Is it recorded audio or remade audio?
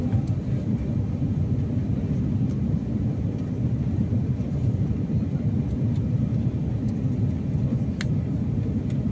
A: recorded